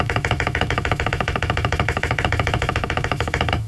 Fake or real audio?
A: fake